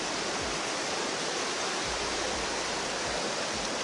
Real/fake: real